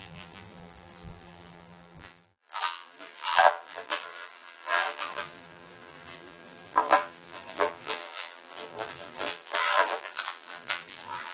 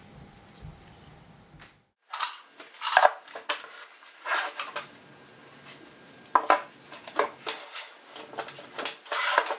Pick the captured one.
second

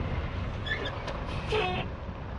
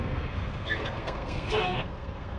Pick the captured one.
first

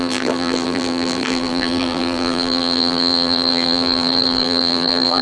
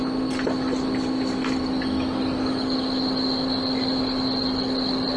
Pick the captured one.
second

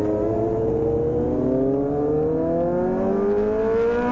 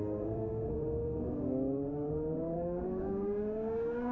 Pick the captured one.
first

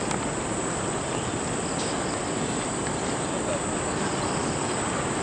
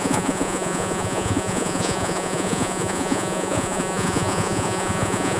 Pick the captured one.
first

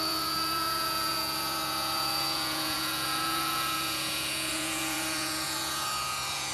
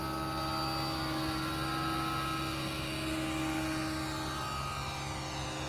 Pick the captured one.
second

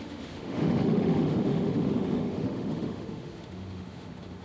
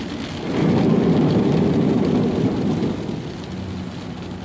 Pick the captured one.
second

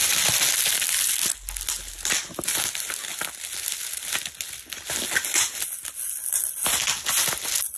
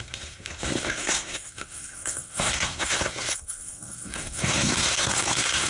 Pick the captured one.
first